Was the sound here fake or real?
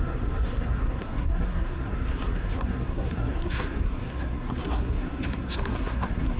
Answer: fake